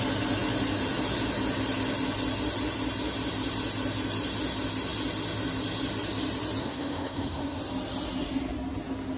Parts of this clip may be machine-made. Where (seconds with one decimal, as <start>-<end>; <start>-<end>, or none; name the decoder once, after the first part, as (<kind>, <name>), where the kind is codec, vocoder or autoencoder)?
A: 6.6-7.6 (codec, SNAC)